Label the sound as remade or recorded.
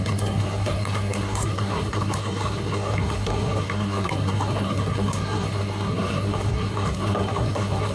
remade